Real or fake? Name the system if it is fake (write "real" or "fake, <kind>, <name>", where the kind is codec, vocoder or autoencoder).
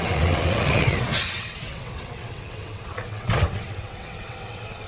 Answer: fake, vocoder, WaveNeXt